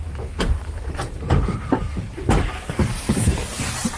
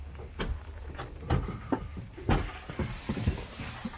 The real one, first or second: second